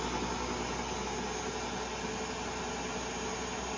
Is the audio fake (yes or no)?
no